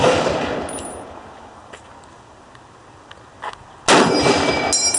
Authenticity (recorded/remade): recorded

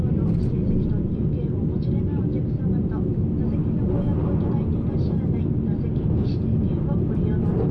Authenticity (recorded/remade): recorded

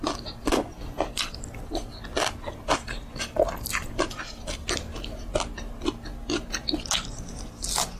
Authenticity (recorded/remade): recorded